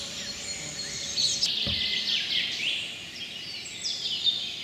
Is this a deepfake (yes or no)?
no